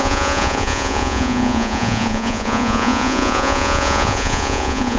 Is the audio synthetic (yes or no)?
yes